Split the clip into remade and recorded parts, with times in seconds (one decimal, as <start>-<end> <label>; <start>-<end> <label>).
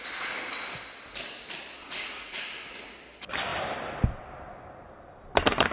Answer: 0.0-1.8 recorded; 1.8-2.4 remade; 2.4-5.7 recorded